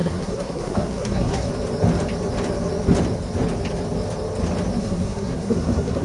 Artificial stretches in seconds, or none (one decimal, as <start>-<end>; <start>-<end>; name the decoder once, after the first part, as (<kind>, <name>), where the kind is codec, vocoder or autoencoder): 0.0-1.5 (codec, SNAC); 4.8-6.0